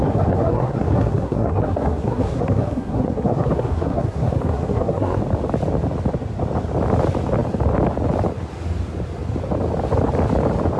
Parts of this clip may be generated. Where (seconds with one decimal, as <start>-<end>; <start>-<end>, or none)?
0.0-5.2